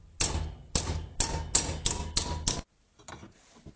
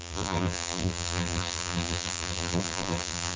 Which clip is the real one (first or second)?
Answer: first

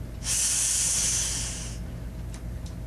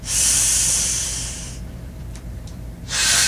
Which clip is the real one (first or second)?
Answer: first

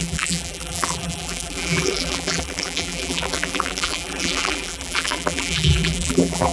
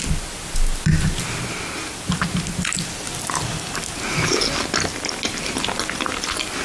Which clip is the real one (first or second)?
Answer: second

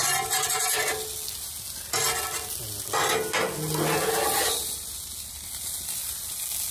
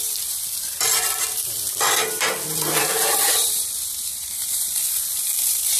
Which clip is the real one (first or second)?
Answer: first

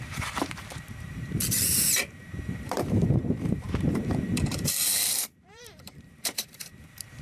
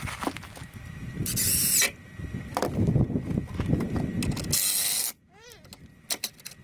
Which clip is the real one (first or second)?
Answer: second